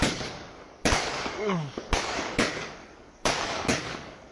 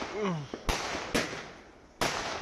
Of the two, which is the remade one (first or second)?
first